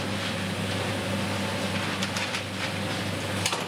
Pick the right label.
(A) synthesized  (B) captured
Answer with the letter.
B